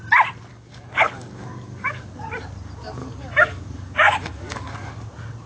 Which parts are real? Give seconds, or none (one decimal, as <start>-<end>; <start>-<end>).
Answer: 0.0-0.5; 2.1-3.0; 4.9-5.5